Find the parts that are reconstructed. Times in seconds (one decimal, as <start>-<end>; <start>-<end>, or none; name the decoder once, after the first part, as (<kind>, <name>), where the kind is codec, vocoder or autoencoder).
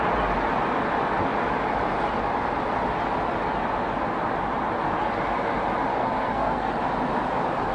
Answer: 5.9-6.7 (codec, SNAC)